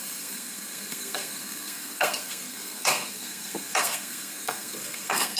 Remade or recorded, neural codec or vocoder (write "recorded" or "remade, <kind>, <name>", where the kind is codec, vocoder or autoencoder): remade, codec, SNAC